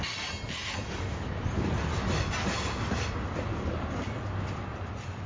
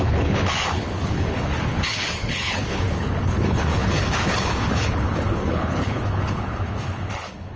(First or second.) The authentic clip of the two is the first